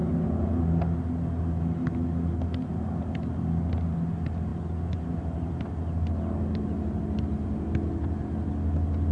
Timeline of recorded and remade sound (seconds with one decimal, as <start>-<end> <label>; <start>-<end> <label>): 0.0-9.1 recorded